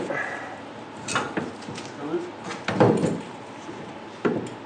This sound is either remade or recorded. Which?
recorded